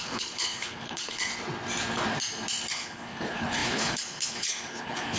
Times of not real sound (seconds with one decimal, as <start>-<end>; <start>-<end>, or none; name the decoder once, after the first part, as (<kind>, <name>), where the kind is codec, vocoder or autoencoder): 0.0-1.3 (codec, HILCodec); 2.7-5.2